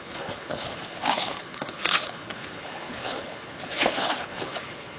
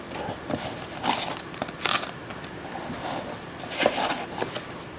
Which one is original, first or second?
second